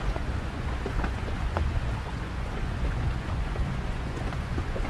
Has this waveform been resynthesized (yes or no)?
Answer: yes